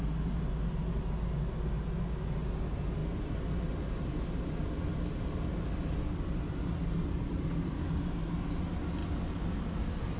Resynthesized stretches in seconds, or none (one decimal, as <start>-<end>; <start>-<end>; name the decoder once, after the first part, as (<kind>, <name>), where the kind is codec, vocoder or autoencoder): none